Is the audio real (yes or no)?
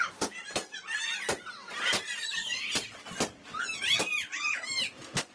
yes